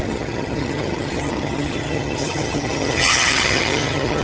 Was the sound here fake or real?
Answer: fake